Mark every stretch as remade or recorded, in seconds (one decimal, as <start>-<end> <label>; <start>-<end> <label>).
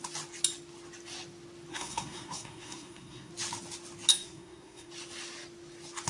0.0-1.7 recorded; 1.7-3.3 remade; 3.3-4.1 recorded; 4.1-4.9 remade; 4.9-6.1 recorded